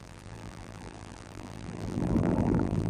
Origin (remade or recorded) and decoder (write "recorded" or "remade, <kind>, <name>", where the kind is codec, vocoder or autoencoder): remade, vocoder, BigVGAN v2